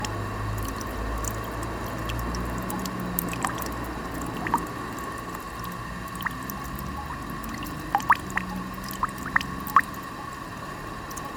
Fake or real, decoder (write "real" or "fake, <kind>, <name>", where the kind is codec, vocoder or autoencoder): real